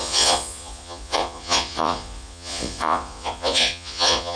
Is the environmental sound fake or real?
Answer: fake